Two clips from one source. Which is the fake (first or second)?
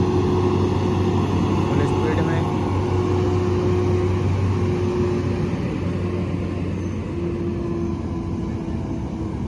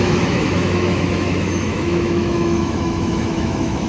second